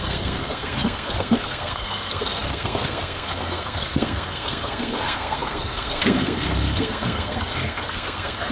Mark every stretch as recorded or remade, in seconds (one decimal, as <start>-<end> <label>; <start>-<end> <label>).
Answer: 0.0-8.5 remade